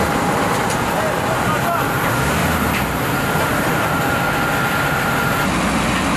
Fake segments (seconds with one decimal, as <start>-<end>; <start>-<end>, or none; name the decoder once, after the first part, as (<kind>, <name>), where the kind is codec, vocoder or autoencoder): 2.4-4.0 (vocoder, BigVGAN v2)